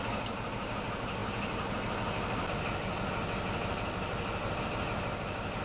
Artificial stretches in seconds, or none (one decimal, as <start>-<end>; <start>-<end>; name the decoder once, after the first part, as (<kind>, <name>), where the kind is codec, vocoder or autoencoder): none